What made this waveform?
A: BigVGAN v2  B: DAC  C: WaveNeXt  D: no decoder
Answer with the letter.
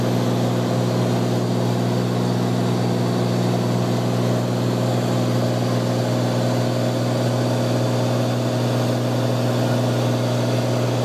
D